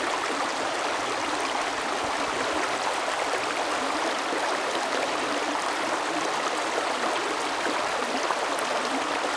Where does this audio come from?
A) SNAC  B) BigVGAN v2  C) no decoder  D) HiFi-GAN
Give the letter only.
C